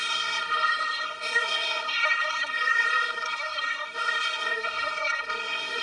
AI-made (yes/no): yes